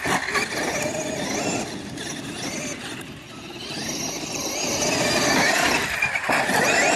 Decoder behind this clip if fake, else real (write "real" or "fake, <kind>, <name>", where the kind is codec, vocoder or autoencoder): real